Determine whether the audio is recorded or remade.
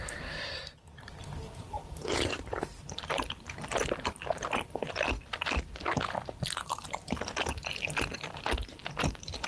remade